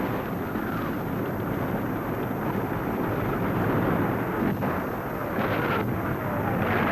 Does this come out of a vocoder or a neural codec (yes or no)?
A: no